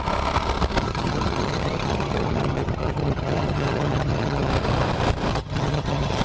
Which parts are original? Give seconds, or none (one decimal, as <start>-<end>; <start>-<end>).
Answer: 0.0-0.8; 4.5-5.3